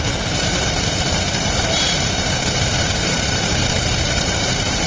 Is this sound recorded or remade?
remade